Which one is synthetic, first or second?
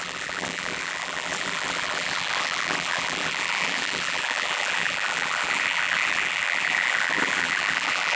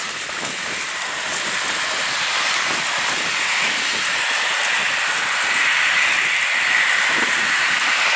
first